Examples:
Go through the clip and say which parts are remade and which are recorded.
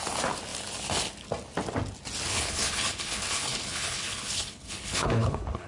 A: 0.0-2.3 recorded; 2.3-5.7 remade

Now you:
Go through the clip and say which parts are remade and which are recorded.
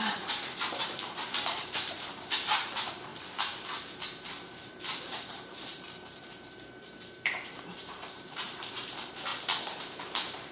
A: 0.0-3.1 remade; 3.1-4.7 recorded; 4.7-9.3 remade; 9.3-9.8 recorded; 9.8-10.5 remade